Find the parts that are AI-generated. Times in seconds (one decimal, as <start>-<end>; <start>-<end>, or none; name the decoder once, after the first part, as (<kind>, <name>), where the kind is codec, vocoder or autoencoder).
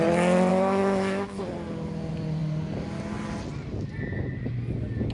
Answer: 0.5-1.4 (autoencoder, DAC-VAE)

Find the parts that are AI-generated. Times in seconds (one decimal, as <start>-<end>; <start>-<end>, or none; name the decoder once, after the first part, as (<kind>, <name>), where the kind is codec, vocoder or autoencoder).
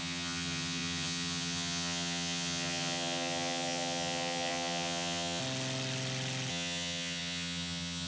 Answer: 0.0-5.4 (vocoder, HiFi-GAN); 6.5-8.1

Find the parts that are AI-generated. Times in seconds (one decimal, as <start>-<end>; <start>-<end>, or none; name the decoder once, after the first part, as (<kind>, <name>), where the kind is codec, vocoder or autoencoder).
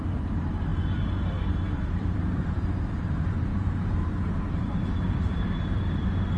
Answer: 0.0-6.4 (vocoder, BigVGAN v2)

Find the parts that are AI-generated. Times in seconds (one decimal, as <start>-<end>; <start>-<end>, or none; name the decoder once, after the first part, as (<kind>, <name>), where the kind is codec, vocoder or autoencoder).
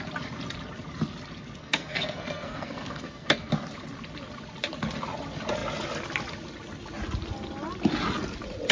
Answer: 1.6-3.5 (codec, SNAC)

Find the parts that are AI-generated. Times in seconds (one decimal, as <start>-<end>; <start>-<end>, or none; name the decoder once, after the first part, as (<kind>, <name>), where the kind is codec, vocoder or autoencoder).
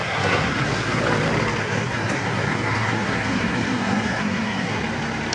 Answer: 0.0-1.0 (codec, SNAC); 1.6-4.8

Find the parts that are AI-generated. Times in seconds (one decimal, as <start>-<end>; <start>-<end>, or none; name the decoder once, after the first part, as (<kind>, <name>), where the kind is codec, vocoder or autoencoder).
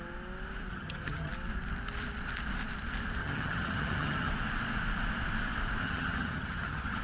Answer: 0.7-1.3 (vocoder, HiFi-GAN); 3.2-4.3; 5.8-7.0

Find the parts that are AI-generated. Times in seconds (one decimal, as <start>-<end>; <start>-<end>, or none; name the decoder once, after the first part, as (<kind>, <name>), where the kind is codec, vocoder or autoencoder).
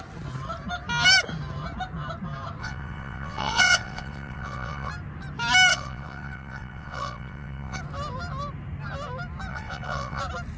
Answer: 2.6-4.9 (vocoder, WaveNeXt); 5.7-7.8; 9.5-10.2